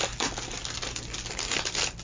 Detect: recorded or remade recorded